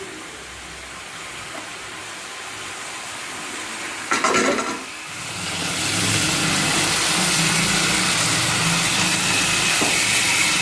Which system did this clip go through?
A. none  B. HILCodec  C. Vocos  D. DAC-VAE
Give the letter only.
A